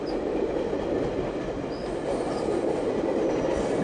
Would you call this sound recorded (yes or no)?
yes